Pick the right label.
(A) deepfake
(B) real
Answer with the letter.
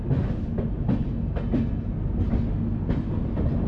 B